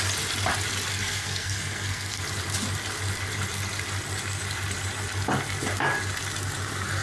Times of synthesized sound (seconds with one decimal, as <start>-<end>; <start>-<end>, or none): 0.9-2.2